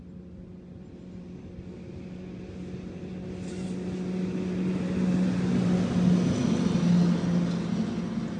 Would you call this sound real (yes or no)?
yes